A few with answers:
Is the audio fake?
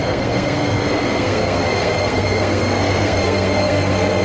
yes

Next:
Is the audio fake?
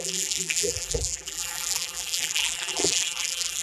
yes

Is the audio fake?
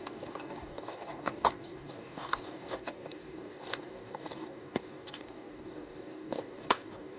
yes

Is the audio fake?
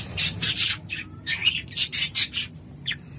yes